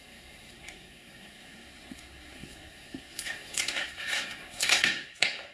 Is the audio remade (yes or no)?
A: yes